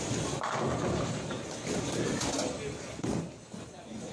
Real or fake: real